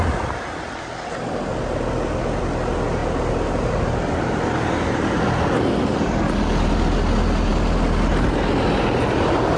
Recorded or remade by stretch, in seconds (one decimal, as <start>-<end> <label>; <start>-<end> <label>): 0.0-9.6 recorded

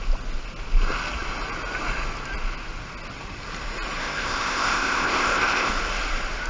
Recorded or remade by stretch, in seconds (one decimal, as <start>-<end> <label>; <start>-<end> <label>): 0.0-4.0 recorded; 4.0-5.7 remade; 5.7-6.5 recorded

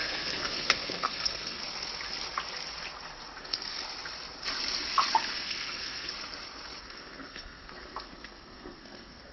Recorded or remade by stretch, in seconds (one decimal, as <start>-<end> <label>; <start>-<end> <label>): 0.0-1.6 remade; 1.6-3.4 recorded; 3.4-3.8 remade; 3.8-5.3 recorded; 5.3-6.1 remade; 6.1-6.8 recorded; 6.8-9.3 remade

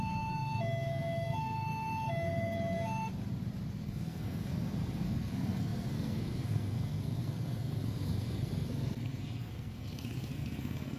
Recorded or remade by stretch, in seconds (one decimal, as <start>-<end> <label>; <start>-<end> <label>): 0.0-3.1 remade; 3.1-3.7 recorded; 3.7-11.0 remade

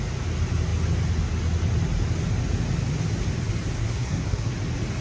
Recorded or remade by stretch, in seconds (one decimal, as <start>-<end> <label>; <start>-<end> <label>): 0.0-3.8 recorded; 3.8-4.5 remade; 4.5-5.0 recorded

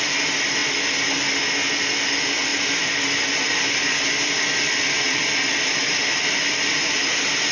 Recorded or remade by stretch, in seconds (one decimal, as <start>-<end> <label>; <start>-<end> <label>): 0.0-7.5 recorded